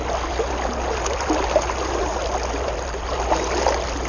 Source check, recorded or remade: recorded